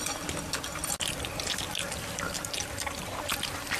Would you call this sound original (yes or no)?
yes